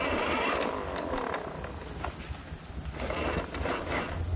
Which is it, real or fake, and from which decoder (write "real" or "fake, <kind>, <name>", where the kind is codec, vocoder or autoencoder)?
real